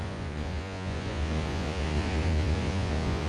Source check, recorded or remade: remade